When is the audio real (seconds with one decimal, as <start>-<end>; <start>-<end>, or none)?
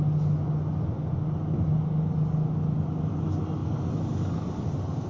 0.0-5.1